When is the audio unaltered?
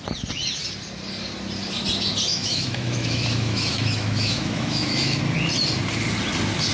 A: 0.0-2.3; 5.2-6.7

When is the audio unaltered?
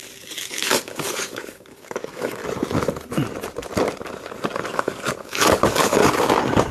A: 2.4-4.6; 6.0-6.7